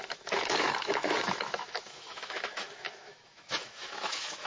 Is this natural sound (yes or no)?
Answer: no